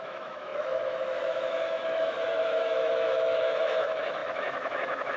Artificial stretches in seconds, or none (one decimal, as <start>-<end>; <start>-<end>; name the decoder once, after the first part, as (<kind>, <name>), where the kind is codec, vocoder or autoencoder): 0.0-5.2 (autoencoder, DAC-VAE)